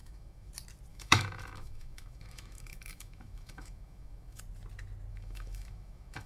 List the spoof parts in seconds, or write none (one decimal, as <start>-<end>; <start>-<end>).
0.0-0.5; 0.9-4.4; 5.1-6.3